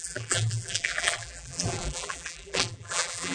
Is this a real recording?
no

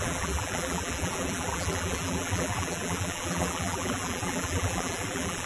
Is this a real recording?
no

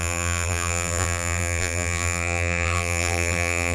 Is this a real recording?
no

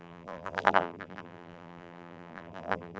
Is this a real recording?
no